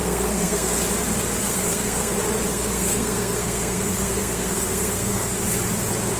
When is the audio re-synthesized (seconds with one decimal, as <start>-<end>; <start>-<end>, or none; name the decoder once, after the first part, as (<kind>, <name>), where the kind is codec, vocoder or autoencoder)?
0.0-0.8 (codec, SNAC); 1.4-2.1; 2.5-5.4